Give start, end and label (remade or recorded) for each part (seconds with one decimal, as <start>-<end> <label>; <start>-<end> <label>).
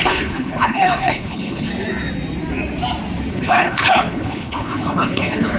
0.0-1.7 remade; 1.7-3.3 recorded; 3.3-5.6 remade